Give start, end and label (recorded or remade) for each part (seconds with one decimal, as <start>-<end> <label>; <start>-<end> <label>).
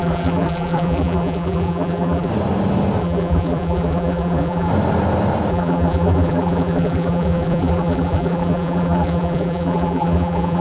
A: 0.0-2.3 remade; 2.3-3.0 recorded; 3.0-4.7 remade; 4.7-5.5 recorded; 5.5-10.6 remade